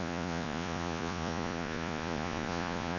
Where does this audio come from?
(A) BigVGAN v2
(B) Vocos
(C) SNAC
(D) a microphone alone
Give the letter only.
B